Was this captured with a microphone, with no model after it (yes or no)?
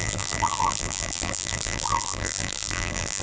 no